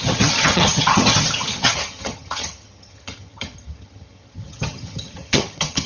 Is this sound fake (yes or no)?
yes